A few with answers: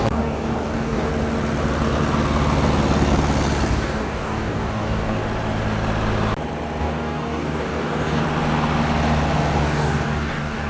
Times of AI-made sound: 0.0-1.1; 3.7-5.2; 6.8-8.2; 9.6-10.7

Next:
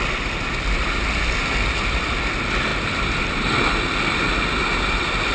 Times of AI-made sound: none